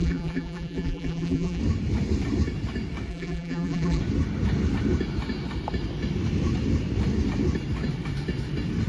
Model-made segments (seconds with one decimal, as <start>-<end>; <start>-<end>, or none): 0.0-1.6; 3.1-4.0